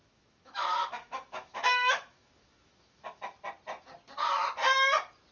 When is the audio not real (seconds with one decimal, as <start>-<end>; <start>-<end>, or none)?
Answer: 0.0-3.2